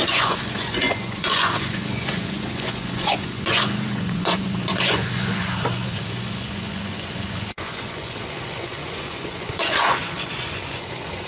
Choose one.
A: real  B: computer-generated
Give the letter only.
B